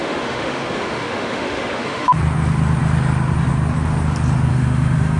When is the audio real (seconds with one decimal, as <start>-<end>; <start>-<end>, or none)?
2.2-4.5